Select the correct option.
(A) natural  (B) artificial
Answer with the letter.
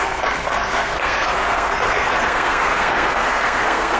B